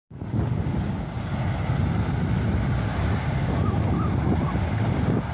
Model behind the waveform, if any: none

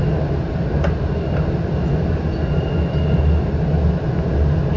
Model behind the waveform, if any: none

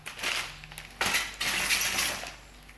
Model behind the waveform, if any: none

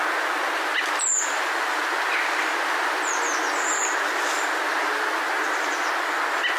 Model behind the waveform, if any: none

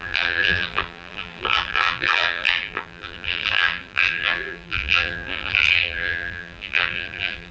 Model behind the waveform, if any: vocoder, BigVGAN v2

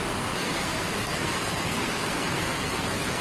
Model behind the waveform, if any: codec, SNAC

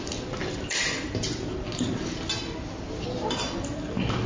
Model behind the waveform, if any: none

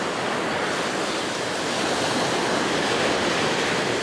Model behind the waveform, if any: none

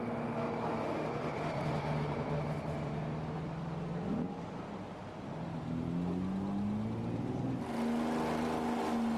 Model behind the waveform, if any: none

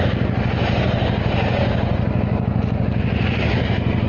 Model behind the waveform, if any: none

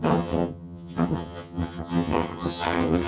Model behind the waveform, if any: vocoder, HiFi-GAN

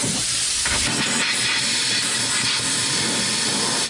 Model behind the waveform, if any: none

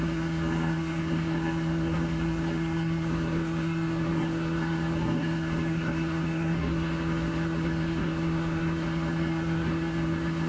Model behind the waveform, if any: codec, SNAC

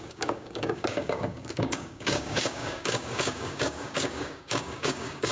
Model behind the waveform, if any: codec, DAC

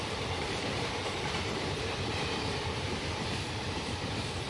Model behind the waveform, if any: vocoder, BigVGAN v2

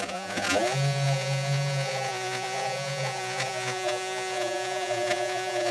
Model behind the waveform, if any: vocoder, Vocos